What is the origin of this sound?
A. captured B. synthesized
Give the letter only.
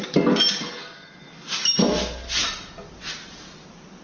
A